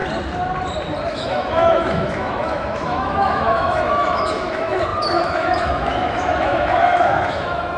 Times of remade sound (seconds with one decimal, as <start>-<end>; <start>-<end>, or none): 1.1-7.8

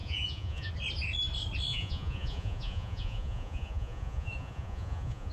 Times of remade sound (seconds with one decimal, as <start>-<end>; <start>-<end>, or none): 0.0-0.7; 1.7-5.3

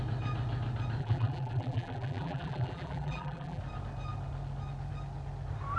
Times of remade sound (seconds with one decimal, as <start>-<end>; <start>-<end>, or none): 1.0-3.6

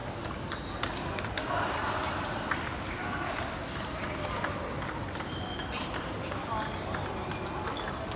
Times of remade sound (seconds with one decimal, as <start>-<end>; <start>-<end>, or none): 2.0-6.9

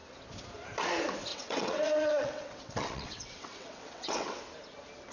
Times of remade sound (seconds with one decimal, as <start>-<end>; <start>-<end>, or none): 1.3-4.4

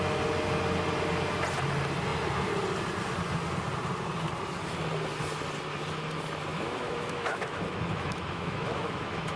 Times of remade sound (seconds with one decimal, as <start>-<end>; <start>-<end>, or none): 6.5-9.4

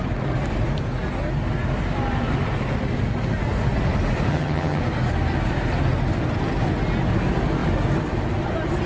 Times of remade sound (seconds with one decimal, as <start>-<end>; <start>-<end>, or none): 4.3-4.8